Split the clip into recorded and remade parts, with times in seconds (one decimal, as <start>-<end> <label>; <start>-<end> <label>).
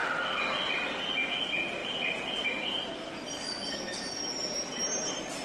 0.0-1.8 recorded; 1.8-3.3 remade; 3.3-5.4 recorded